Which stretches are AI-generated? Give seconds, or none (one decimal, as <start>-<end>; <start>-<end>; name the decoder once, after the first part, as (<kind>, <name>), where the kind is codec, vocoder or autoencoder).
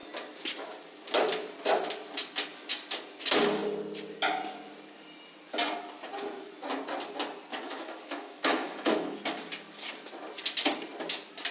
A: 7.5-9.2 (autoencoder, DAC-VAE)